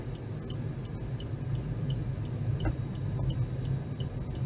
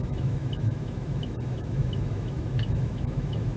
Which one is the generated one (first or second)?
second